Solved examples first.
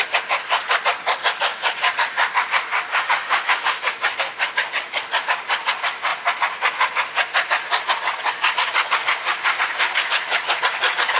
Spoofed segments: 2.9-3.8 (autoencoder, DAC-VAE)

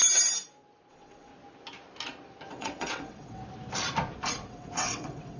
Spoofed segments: 0.9-1.3 (vocoder, WaveNeXt); 2.5-3.4; 4.3-5.4

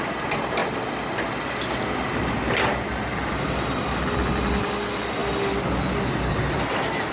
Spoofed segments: none

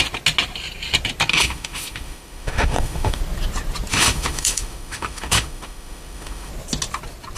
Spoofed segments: 1.3-3.2 (autoencoder, DAC-VAE); 3.9-6.5

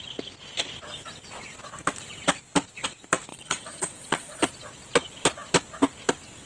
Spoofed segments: 3.3-4.5 (vocoder, Vocos)